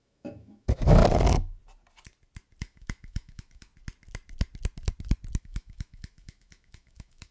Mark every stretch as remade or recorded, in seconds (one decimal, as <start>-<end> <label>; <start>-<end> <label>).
0.0-1.0 remade; 1.0-2.6 recorded; 2.6-3.7 remade; 3.7-5.4 recorded; 5.4-7.3 remade